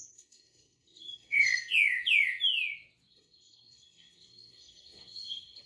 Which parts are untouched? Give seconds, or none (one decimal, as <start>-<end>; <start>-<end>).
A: 1.7-3.1